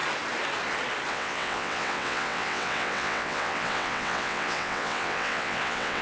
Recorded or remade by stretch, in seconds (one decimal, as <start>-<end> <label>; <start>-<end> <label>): 0.0-1.1 recorded; 1.1-6.0 remade